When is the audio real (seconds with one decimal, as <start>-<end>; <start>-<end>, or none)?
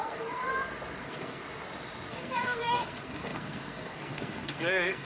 0.4-1.0; 1.4-2.1